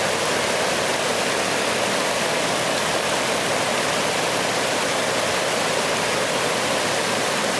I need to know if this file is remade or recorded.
remade